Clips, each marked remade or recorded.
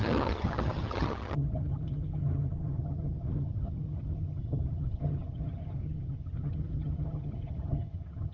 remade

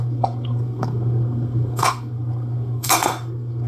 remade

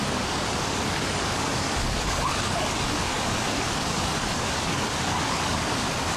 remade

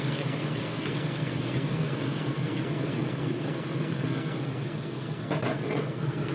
remade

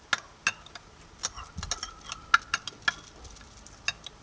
recorded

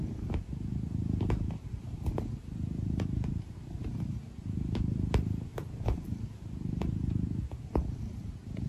remade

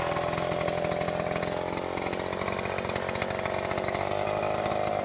recorded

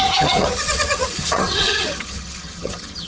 remade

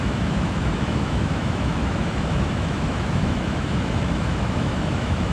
remade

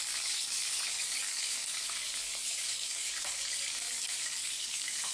remade